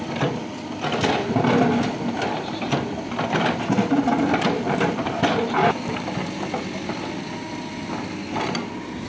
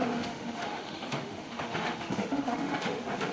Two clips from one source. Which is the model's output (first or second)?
second